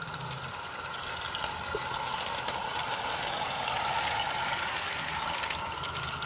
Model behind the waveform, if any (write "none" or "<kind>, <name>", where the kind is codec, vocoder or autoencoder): none